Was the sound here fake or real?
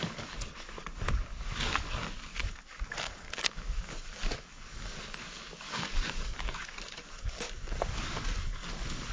fake